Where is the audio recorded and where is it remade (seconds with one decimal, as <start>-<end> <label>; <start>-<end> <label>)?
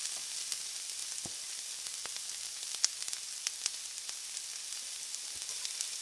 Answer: 0.0-6.0 recorded